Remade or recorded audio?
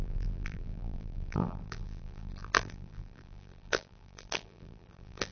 remade